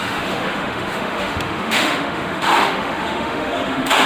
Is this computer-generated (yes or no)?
yes